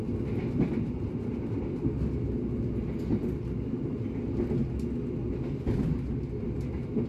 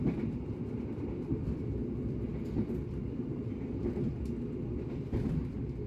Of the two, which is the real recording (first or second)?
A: first